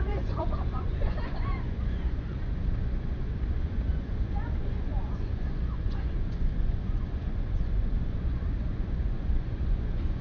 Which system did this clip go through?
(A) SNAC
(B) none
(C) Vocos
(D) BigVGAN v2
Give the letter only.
C